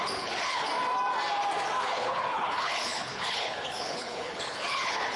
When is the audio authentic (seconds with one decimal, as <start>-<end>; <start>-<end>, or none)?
0.7-1.8